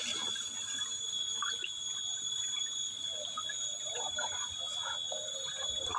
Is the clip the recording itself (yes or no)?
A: yes